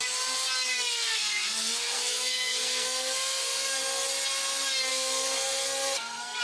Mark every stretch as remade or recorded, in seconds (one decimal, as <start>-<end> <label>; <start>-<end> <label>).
0.0-0.7 recorded; 0.7-3.8 remade; 3.8-4.9 recorded; 4.9-6.4 remade